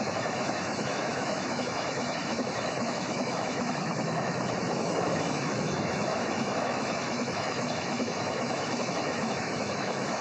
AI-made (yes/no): yes